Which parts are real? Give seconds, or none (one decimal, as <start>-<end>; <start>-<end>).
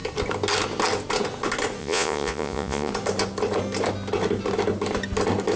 0.0-1.8; 2.9-5.6